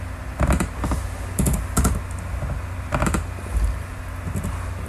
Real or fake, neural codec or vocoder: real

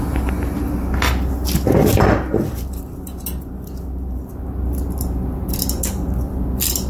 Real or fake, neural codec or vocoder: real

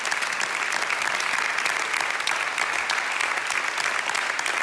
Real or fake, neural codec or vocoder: real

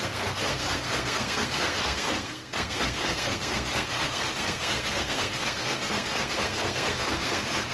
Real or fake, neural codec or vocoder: fake, codec, SNAC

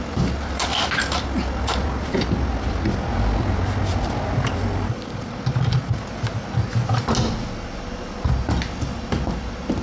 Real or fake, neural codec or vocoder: real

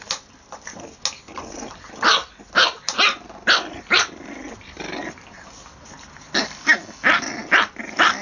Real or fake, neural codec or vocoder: real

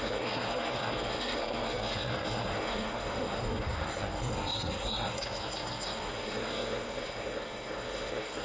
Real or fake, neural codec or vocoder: fake, codec, SNAC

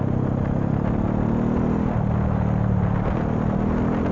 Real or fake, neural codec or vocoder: real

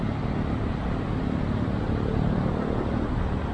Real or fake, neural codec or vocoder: real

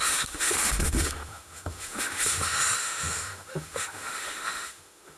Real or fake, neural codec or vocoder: fake, autoencoder, DAC-VAE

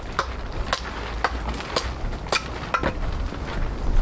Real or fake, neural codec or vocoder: real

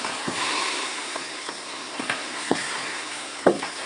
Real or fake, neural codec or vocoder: fake, codec, SNAC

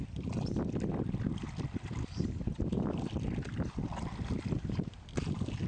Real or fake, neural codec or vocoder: real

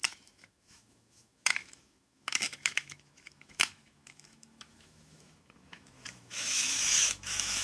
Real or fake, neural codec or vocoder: fake, autoencoder, DAC-VAE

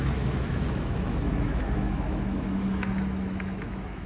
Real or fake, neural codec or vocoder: fake, autoencoder, DAC-VAE